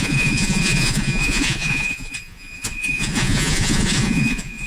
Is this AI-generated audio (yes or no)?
yes